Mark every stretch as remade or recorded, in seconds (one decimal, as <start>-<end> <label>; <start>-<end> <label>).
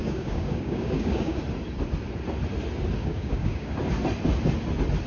0.0-1.4 remade; 1.4-3.0 recorded; 3.0-3.7 remade; 3.7-5.1 recorded